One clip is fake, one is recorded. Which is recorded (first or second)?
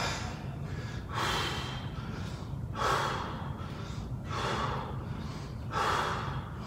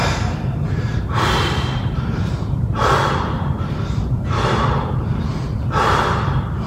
first